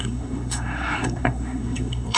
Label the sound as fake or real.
fake